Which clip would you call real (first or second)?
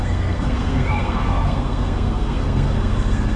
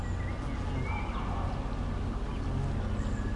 second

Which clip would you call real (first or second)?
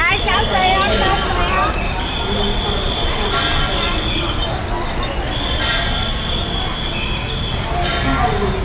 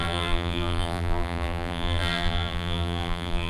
first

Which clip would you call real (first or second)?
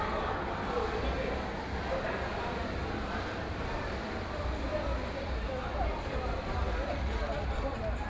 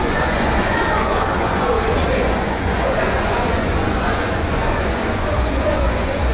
first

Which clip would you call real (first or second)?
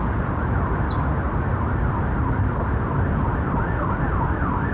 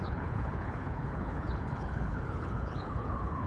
first